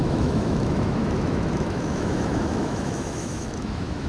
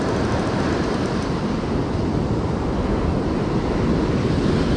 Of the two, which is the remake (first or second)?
first